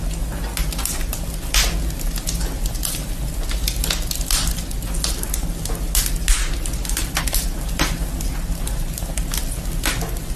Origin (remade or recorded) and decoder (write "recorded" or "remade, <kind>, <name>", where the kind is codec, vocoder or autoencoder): recorded